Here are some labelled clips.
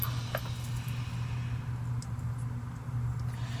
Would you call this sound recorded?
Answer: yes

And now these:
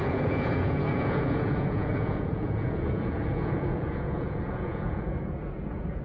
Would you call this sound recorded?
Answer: no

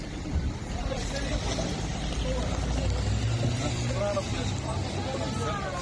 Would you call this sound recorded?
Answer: yes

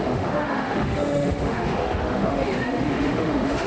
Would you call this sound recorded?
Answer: no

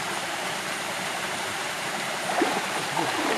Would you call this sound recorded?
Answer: no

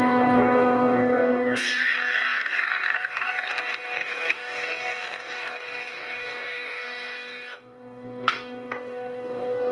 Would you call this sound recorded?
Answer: no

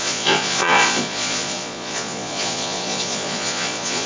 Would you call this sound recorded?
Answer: no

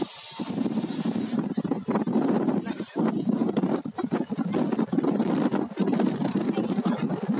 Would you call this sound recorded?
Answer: yes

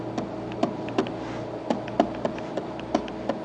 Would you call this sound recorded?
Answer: yes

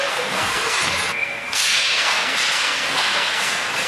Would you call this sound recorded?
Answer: no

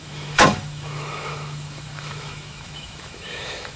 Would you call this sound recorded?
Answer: no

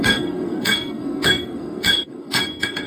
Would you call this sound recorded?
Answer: no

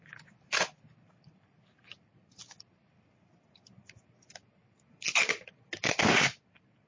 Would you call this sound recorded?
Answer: no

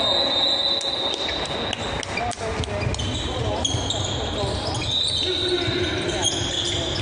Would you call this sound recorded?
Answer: yes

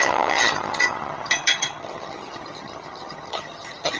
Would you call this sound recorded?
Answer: no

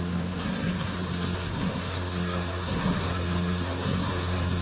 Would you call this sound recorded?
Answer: no